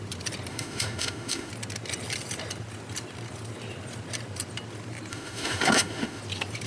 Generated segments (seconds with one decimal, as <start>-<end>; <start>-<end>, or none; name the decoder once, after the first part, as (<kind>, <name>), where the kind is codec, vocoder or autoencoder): 0.5-1.5 (autoencoder, DAC-VAE); 5.1-6.2